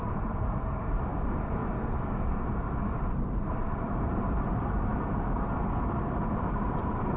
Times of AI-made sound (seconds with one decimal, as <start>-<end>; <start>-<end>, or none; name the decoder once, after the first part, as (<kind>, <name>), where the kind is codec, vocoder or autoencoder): 0.0-1.6 (vocoder, BigVGAN v2); 2.2-4.9; 6.3-7.2